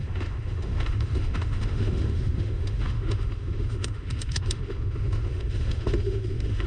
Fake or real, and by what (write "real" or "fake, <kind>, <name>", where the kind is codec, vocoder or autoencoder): fake, autoencoder, DAC-VAE